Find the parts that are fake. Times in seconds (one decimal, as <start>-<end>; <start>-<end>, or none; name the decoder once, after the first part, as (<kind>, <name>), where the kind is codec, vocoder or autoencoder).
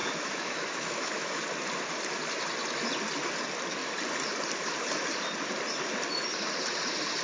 0.0-1.4 (autoencoder, DAC-VAE)